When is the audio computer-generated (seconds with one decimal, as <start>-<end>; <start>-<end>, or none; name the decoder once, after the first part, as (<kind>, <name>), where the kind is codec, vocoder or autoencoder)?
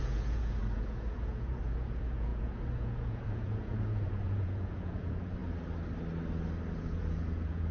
0.0-5.4 (vocoder, Vocos); 6.8-7.7